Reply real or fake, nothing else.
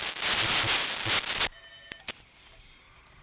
real